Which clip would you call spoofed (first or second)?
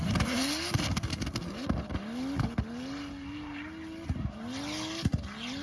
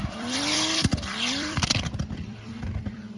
second